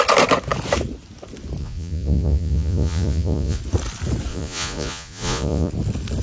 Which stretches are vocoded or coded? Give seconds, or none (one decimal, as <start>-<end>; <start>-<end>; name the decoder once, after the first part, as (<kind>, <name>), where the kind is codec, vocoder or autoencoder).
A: 1.6-3.6 (vocoder, Vocos); 4.3-5.7